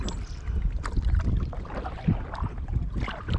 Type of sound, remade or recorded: recorded